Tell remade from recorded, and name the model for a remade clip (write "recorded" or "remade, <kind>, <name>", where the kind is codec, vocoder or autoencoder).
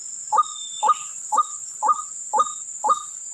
recorded